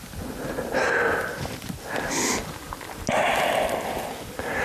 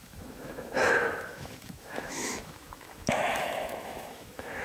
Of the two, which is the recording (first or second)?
first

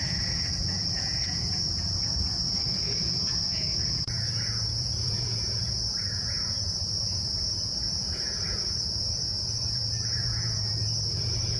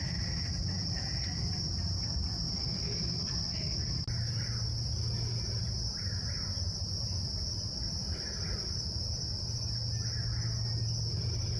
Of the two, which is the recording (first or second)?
second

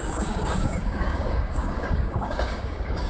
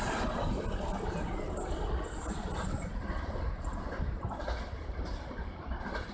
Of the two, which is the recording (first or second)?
second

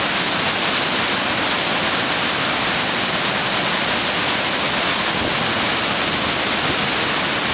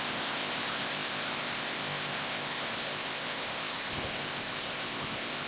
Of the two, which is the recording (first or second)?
first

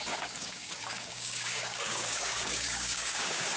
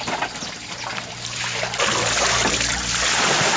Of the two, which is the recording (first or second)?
second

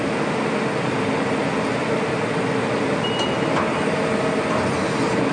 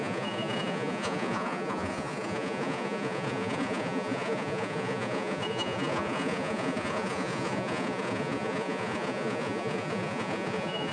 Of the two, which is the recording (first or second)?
first